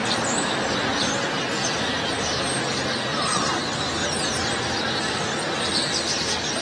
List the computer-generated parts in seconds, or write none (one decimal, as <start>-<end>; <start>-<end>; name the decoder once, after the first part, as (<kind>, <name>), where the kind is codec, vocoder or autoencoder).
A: 1.6-2.3 (vocoder, BigVGAN v2); 3.1-3.6